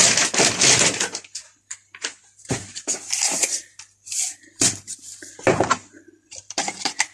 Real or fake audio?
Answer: fake